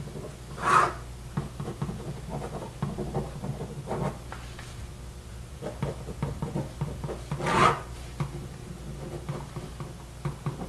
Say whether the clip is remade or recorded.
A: recorded